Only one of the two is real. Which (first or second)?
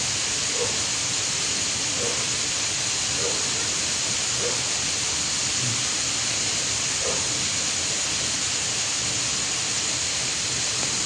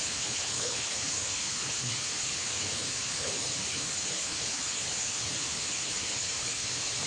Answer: first